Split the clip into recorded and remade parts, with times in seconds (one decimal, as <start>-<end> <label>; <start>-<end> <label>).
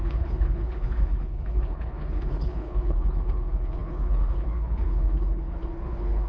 0.0-6.3 remade